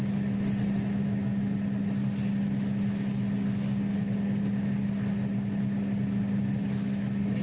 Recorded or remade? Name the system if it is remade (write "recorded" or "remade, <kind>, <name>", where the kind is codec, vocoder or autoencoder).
recorded